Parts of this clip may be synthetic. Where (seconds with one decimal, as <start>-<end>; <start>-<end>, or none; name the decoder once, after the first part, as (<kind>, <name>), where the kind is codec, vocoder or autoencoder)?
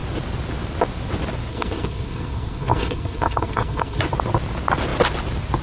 1.5-4.0 (codec, SNAC)